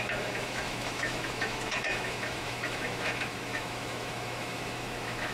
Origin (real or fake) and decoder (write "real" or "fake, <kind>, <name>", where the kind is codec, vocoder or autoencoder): fake, autoencoder, DAC-VAE